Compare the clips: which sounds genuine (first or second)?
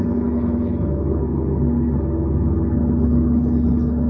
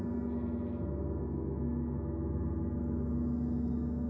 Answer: second